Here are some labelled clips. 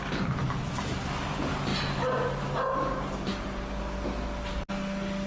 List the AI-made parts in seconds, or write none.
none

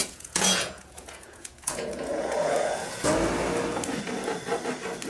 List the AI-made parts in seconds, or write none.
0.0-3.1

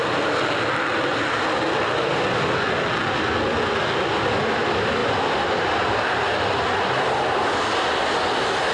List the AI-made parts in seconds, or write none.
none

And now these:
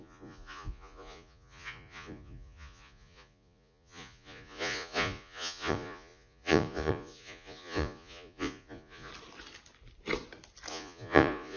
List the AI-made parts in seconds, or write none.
0.0-9.1; 10.7-11.6

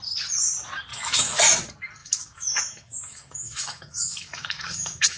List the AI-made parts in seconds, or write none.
0.9-1.4; 2.0-5.2

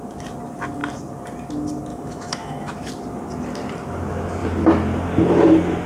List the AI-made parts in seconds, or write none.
1.9-2.9